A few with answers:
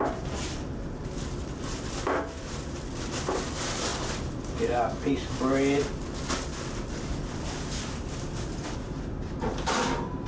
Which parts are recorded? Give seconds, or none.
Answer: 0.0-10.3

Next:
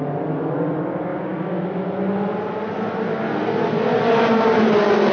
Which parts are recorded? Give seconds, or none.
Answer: 0.0-5.1

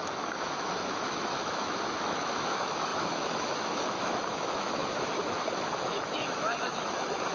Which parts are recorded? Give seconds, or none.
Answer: none

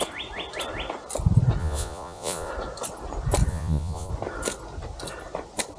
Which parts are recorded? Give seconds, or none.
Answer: 0.0-1.6; 2.5-3.5; 4.1-5.8

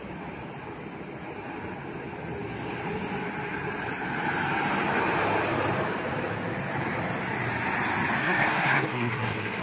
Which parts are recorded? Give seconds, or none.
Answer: 0.0-8.2

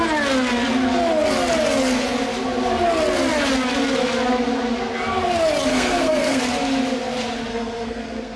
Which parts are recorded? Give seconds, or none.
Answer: 0.0-5.7; 6.4-7.5

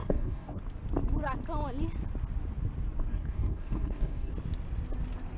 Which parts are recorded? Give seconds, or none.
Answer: 0.6-3.1; 4.3-5.4

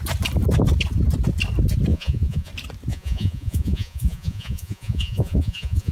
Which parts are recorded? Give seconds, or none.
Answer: 0.0-1.9; 2.5-2.9